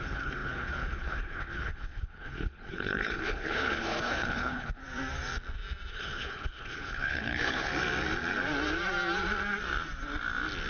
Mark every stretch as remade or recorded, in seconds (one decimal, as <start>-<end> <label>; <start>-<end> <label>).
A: 0.0-4.8 remade; 4.8-5.9 recorded; 5.9-7.7 remade; 7.7-10.7 recorded